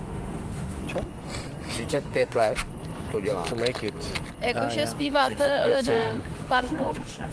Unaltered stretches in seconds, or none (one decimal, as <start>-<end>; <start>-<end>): 0.8-1.9; 2.7-5.0